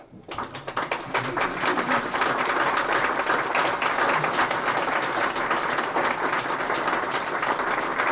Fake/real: real